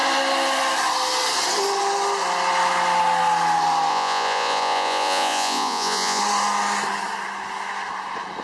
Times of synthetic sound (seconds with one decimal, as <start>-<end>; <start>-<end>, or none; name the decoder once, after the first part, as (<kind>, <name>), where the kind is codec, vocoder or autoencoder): 3.9-6.2 (vocoder, Vocos)